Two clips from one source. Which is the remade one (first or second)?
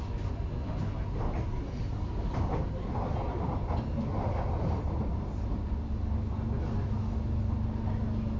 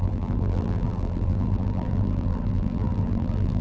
second